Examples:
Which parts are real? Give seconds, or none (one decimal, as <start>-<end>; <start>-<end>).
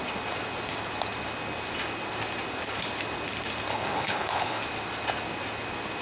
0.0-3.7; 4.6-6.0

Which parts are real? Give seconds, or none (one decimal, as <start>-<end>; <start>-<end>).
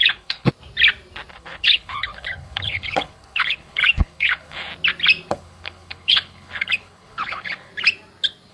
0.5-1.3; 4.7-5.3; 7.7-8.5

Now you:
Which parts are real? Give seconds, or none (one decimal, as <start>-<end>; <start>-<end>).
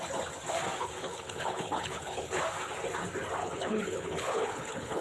0.0-0.8; 2.4-3.4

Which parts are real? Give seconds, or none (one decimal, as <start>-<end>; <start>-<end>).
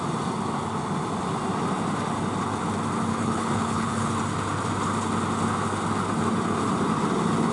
0.0-3.1; 4.1-7.5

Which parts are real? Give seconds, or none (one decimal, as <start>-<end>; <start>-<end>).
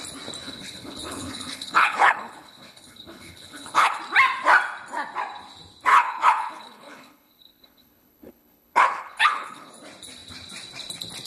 0.0-0.4; 4.0-5.9; 9.7-11.3